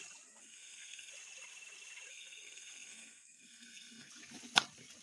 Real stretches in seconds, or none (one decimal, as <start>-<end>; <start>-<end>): 0.0-0.4; 1.1-2.1; 4.1-5.0